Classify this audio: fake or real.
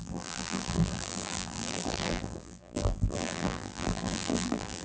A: fake